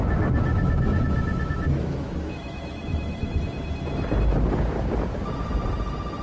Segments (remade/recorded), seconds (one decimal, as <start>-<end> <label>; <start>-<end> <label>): 0.0-0.5 recorded; 0.5-3.4 remade; 3.4-6.2 recorded